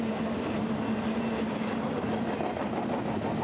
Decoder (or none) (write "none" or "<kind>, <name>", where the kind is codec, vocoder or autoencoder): none